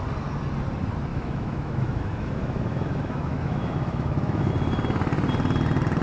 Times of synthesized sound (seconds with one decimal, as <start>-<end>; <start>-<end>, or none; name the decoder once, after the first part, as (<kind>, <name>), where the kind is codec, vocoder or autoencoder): 1.1-4.5 (autoencoder, DAC-VAE)